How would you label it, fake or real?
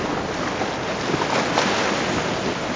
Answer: real